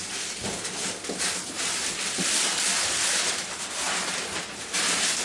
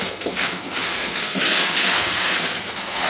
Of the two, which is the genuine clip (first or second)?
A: first